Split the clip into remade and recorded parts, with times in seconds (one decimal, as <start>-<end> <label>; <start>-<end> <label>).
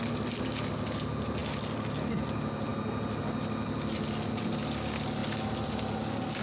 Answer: 0.0-6.4 recorded